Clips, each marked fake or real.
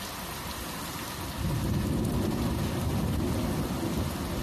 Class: real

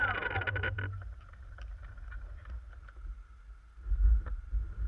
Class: real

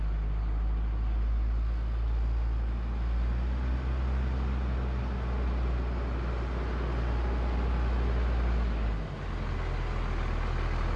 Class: real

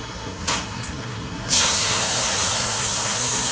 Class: fake